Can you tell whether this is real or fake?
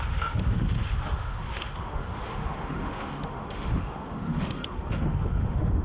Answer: fake